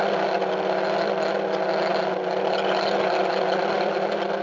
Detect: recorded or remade recorded